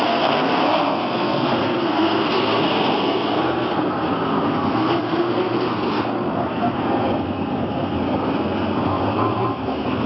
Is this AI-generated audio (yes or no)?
yes